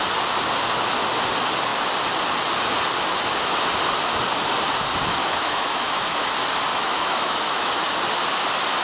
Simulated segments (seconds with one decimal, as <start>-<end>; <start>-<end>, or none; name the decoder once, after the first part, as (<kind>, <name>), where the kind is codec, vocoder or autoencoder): 5.2-6.3 (autoencoder, DAC-VAE); 6.7-7.7